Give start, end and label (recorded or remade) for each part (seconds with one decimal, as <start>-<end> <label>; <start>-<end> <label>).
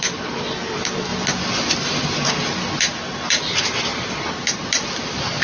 0.0-5.4 recorded